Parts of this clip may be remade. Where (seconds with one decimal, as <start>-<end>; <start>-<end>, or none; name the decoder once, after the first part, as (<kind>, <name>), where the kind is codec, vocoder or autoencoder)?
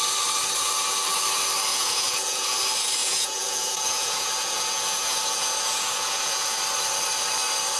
1.7-2.6 (vocoder, Vocos); 3.0-6.6